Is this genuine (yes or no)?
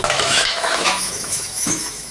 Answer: no